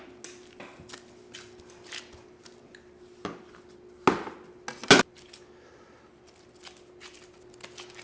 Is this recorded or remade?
recorded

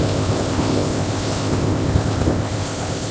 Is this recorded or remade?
remade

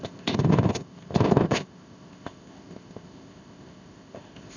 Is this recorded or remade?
remade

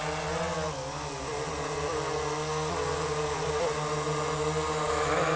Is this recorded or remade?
recorded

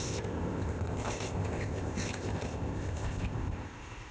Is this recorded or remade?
remade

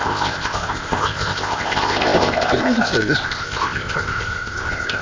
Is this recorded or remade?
remade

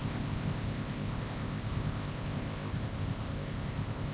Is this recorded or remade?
remade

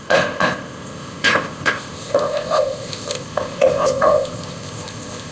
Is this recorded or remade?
remade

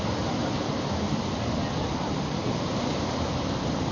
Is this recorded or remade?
recorded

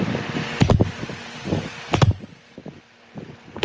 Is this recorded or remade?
recorded